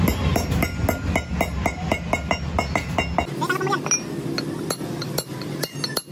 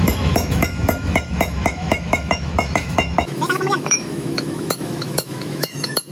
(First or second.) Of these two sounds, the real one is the first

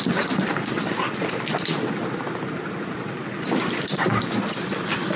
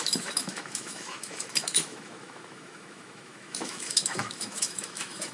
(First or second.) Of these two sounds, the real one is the first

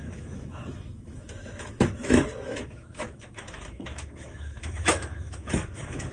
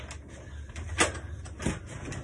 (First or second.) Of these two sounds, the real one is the second